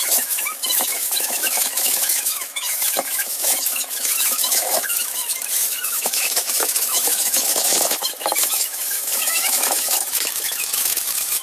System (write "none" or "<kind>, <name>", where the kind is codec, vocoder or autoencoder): autoencoder, DAC-VAE